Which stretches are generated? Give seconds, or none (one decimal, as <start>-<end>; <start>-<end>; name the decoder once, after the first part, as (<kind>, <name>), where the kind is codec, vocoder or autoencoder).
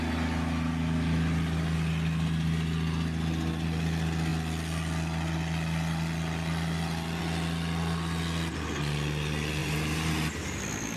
9.6-10.6 (vocoder, BigVGAN v2)